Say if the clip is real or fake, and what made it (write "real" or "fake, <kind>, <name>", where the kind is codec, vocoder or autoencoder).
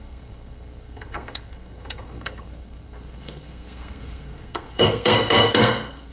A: fake, codec, SNAC